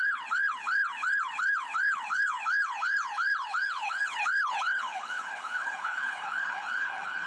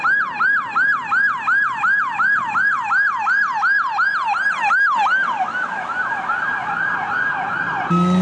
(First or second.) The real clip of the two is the second